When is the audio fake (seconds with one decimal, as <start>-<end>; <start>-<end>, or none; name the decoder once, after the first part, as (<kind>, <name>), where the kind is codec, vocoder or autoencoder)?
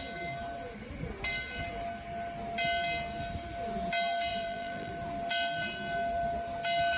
4.3-4.9 (vocoder, BigVGAN v2)